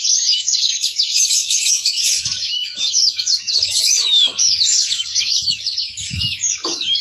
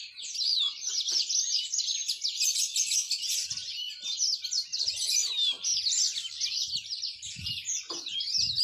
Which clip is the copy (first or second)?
first